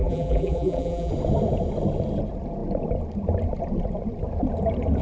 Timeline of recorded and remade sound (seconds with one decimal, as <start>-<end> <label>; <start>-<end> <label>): 0.0-1.1 remade; 1.1-5.0 recorded